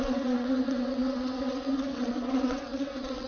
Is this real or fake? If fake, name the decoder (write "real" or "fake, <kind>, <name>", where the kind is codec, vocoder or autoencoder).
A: fake, vocoder, WaveNeXt